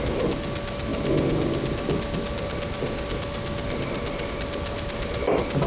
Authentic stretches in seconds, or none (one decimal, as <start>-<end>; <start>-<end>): 0.0-5.7